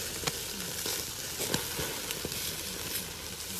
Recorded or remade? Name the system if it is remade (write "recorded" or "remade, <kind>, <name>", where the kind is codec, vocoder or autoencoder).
recorded